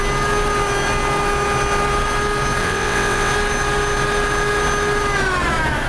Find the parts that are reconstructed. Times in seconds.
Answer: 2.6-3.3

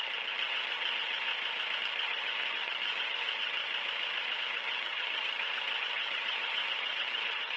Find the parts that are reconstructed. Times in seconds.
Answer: 0.0-1.3; 1.8-3.6; 4.4-7.6

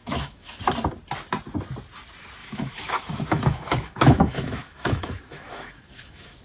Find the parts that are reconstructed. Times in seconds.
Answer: 0.0-0.6; 2.4-6.4

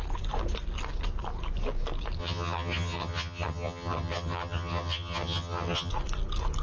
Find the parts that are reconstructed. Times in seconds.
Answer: 2.2-5.9

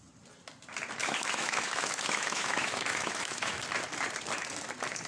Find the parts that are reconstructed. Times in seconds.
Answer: 1.0-3.6

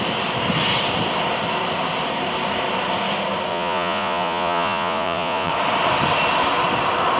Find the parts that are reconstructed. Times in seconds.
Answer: 3.5-5.5